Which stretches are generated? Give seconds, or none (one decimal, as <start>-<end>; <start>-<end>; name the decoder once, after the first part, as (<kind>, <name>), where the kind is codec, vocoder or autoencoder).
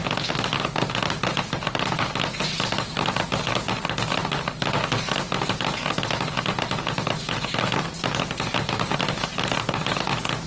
none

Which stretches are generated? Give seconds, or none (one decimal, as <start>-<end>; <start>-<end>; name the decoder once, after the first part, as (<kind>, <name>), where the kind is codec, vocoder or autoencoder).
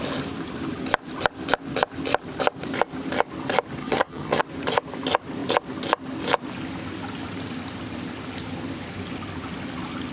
3.8-4.4 (vocoder, HiFi-GAN)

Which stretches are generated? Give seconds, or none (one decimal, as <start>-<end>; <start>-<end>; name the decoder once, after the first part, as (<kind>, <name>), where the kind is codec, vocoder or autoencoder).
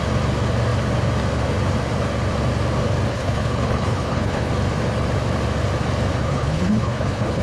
3.1-4.5 (codec, HILCodec); 6.2-7.4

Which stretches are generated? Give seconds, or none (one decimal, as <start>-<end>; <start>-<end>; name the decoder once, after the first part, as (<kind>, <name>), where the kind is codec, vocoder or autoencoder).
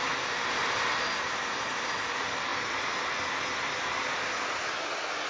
none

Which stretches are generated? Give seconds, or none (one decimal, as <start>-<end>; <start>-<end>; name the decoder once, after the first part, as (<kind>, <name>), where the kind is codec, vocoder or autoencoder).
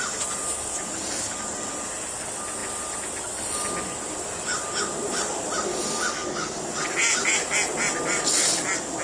2.6-3.6 (vocoder, BigVGAN v2)